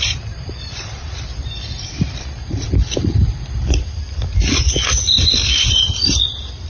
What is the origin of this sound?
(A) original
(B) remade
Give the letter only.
B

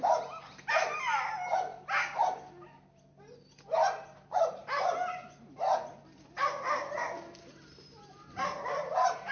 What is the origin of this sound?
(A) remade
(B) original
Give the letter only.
B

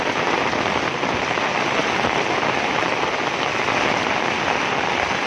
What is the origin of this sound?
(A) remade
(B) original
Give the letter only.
B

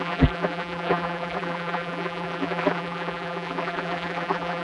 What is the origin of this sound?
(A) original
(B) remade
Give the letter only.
B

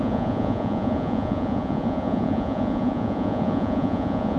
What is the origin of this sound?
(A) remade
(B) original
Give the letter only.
A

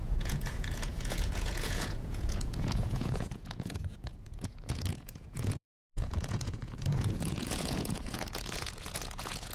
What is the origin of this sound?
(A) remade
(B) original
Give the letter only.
A